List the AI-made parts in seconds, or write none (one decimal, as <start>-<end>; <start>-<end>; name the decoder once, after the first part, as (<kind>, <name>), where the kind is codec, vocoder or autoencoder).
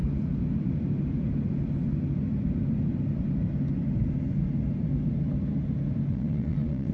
6.1-6.9 (vocoder, Vocos)